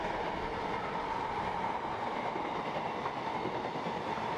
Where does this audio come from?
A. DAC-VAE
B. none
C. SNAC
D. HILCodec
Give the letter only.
B